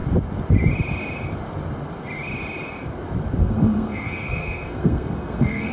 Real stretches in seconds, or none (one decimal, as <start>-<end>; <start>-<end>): 0.0-3.4